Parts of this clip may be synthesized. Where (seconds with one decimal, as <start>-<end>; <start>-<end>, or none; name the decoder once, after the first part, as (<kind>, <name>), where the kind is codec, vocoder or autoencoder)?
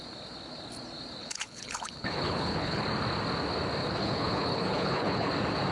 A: 1.2-2.8 (codec, HILCodec); 3.8-5.3